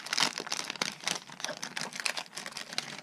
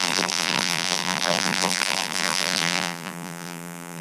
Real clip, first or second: first